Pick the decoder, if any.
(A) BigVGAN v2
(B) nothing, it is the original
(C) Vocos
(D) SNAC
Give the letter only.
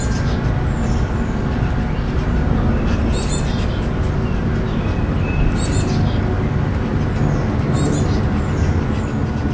B